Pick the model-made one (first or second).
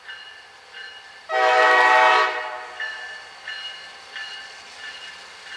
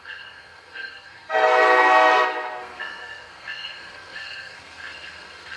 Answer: second